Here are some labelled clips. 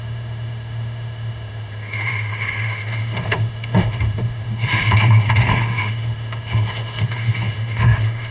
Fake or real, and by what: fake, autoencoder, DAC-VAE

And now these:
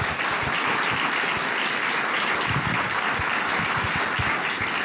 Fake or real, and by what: real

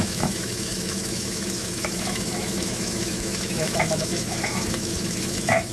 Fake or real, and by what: fake, autoencoder, DAC-VAE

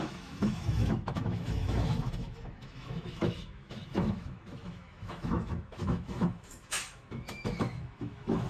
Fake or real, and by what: fake, autoencoder, DAC-VAE